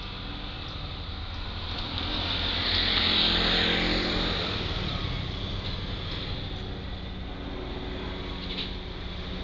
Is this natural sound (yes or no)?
yes